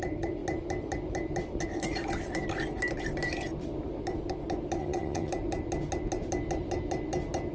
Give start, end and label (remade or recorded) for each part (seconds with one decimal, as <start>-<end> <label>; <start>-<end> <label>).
0.0-4.8 recorded; 4.8-5.3 remade; 5.3-7.5 recorded